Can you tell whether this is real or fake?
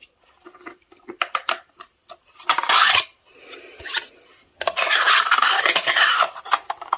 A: fake